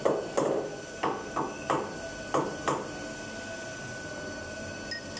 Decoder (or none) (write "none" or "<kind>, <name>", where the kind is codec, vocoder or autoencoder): none